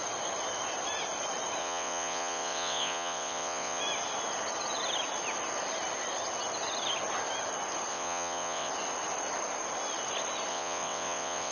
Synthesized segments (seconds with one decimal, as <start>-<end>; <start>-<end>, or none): 1.6-3.8; 7.9-8.7; 10.5-11.5